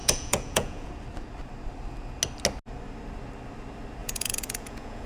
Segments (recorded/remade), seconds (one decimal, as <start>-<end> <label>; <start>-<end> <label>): 0.0-0.9 remade; 0.9-4.0 recorded; 4.0-5.1 remade